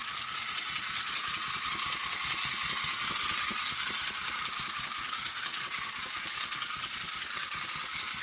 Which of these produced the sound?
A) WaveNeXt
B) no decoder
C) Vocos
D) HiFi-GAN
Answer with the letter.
B